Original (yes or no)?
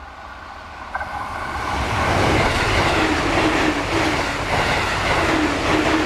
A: yes